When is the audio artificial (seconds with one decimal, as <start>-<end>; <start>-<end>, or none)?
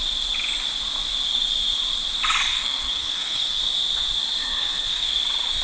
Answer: 2.5-3.6; 4.4-5.1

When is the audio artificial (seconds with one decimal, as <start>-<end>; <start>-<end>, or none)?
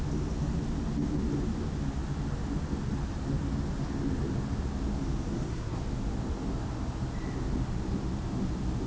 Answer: 5.3-5.8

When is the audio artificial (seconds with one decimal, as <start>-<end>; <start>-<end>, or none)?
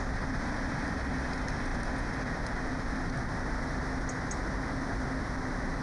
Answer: none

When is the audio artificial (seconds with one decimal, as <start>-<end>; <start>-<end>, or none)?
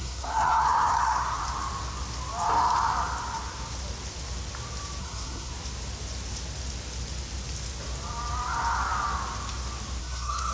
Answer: 0.0-1.4; 5.0-5.5; 10.0-10.5